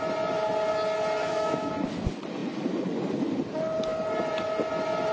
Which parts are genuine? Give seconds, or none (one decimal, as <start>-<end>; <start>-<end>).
0.0-1.2; 1.7-5.1